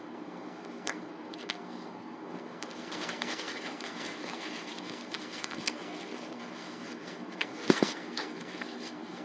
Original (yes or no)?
no